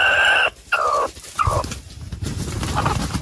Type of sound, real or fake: real